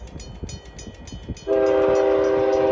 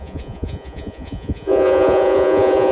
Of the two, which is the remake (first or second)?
second